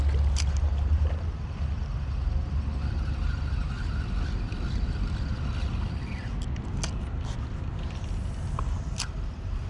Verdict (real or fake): real